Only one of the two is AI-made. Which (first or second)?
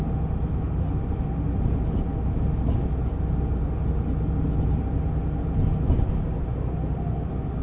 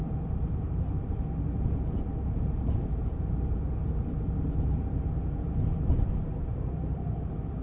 second